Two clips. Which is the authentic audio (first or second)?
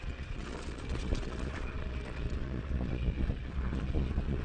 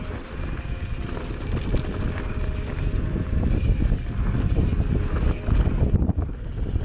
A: second